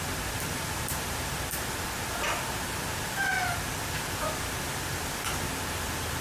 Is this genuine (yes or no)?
no